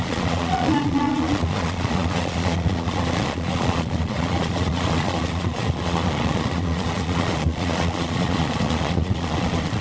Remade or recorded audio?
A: remade